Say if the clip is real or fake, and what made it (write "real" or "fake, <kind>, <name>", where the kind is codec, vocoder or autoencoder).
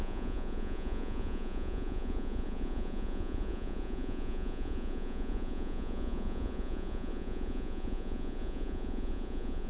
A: fake, vocoder, Vocos